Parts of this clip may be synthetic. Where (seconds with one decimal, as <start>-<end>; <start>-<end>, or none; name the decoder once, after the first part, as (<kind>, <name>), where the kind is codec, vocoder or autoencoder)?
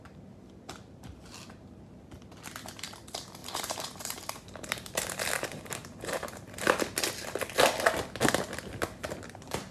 3.4-6.5 (vocoder, BigVGAN v2)